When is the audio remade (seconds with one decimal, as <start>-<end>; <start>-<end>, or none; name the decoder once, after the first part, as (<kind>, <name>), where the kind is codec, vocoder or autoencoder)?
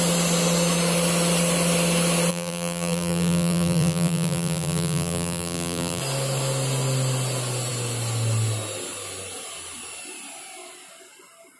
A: 2.3-6.0 (vocoder, BigVGAN v2)